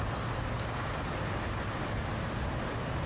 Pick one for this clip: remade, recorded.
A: recorded